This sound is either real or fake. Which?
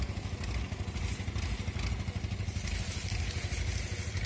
real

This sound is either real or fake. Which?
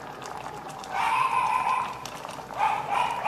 fake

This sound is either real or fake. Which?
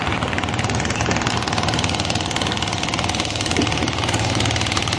fake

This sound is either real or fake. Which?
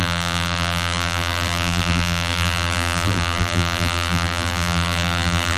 fake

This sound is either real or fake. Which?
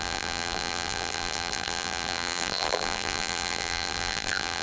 fake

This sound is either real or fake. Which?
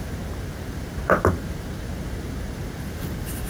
fake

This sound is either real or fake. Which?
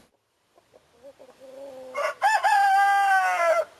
real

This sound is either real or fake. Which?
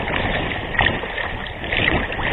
fake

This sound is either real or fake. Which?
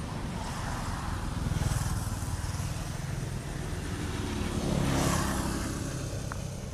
fake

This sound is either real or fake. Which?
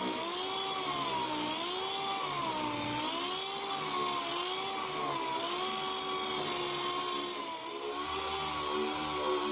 real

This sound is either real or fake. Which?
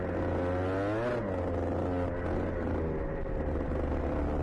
real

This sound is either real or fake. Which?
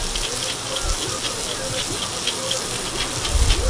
real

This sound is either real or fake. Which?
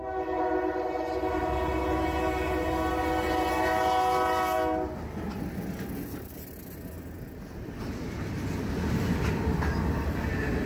real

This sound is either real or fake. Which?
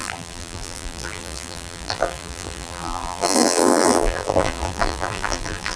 fake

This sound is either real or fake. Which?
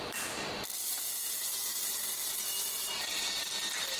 real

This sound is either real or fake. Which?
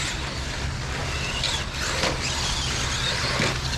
real